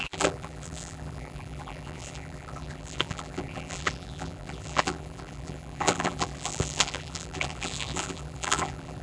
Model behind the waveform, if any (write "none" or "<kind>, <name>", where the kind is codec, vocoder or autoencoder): vocoder, BigVGAN v2